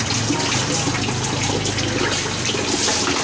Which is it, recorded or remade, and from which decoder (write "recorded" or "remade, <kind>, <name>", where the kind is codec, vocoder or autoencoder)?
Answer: recorded